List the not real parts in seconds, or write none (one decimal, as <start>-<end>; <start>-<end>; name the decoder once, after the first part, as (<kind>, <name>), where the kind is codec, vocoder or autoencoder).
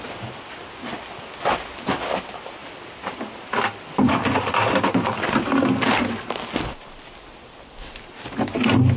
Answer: none